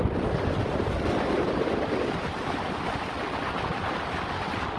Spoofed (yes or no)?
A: no